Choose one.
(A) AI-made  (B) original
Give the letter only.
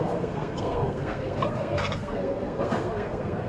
A